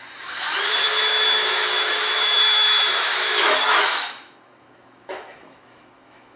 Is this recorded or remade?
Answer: remade